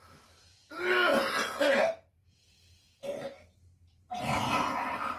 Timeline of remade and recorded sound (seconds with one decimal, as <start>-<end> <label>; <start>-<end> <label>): 0.0-5.2 recorded